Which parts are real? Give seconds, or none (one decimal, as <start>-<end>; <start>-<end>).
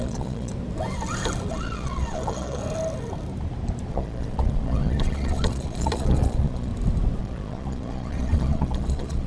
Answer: 0.5-1.5; 2.6-3.9; 6.7-7.2